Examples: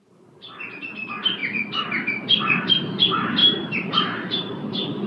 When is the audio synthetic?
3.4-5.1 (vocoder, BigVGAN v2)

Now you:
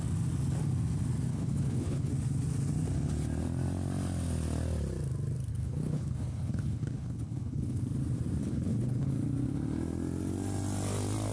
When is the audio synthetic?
1.3-2.1 (codec, HILCodec); 5.5-7.8; 8.4-9.1

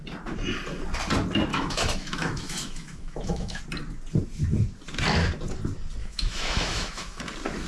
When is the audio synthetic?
1.5-3.6 (autoencoder, DAC-VAE); 6.0-7.2

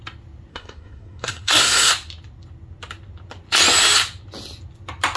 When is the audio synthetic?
0.5-1.9 (codec, SNAC)

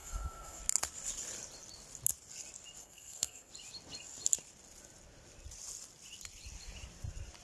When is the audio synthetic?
0.0-0.6 (codec, SNAC); 2.8-3.5

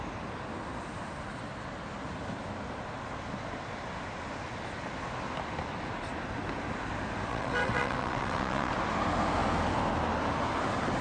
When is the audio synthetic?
7.3-8.7 (vocoder, WaveNeXt)

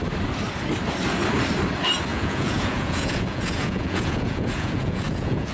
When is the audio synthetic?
2.1-5.5 (vocoder, Vocos)

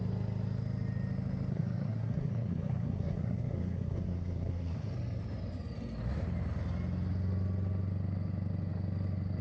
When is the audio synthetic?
1.5-4.9 (codec, SNAC)